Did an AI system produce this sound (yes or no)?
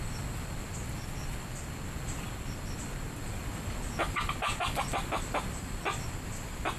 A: no